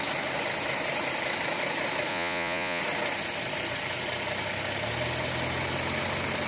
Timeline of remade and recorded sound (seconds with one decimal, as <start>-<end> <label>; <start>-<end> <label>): 0.0-2.1 recorded; 2.1-2.8 remade; 2.8-6.5 recorded